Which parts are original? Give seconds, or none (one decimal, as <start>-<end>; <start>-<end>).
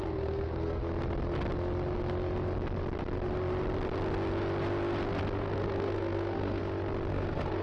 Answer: 0.8-5.4; 6.6-7.1